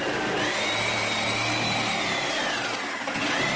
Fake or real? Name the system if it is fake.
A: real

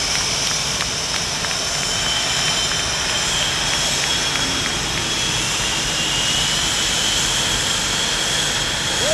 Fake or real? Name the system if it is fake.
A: real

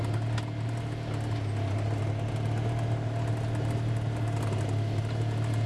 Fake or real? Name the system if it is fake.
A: real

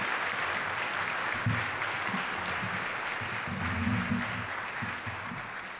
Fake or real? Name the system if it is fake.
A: real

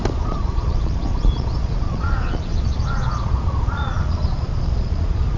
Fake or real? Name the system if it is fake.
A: fake, vocoder, Vocos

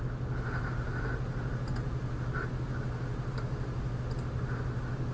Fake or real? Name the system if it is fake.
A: real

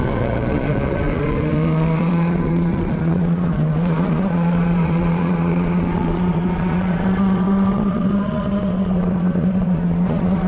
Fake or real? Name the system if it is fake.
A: fake, vocoder, Vocos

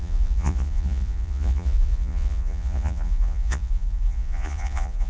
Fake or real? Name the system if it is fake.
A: fake, vocoder, Vocos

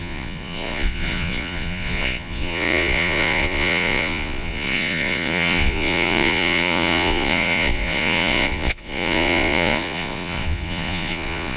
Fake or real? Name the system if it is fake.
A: fake, vocoder, Vocos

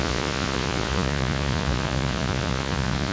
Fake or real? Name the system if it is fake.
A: fake, vocoder, Vocos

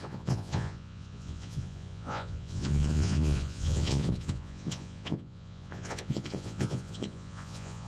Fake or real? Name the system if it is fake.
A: fake, vocoder, Vocos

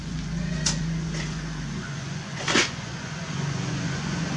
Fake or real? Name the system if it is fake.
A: fake, vocoder, Vocos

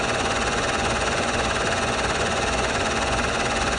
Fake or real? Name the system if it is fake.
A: fake, vocoder, Vocos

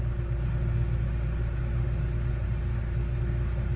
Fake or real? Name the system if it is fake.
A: real